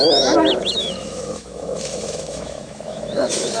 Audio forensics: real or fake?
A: fake